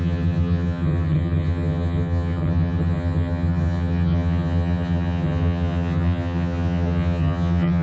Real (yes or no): no